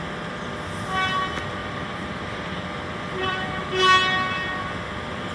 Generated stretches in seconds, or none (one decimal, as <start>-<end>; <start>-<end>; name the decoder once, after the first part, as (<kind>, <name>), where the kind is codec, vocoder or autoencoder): 1.6-3.6 (vocoder, BigVGAN v2)